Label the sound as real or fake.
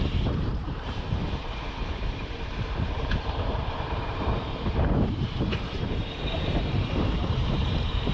fake